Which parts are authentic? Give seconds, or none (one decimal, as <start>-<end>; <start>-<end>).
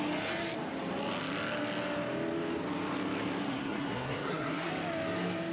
0.0-3.4; 4.7-5.5